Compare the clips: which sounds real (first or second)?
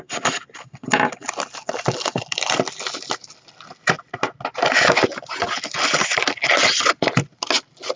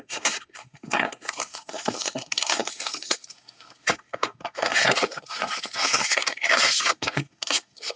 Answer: first